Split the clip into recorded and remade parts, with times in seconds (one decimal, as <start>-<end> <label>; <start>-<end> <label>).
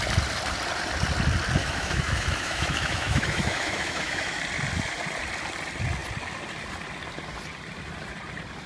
0.0-1.6 recorded; 1.6-4.4 remade; 4.4-8.7 recorded